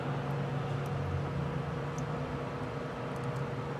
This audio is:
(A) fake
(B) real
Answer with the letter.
B